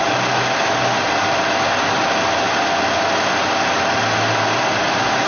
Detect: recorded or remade recorded